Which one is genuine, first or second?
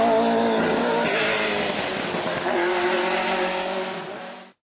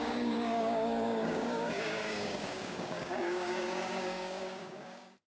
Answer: first